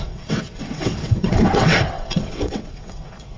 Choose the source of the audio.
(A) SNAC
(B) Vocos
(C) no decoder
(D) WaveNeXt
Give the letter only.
D